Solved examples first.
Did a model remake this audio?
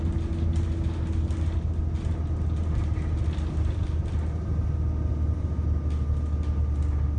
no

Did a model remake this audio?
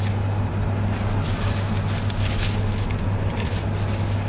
no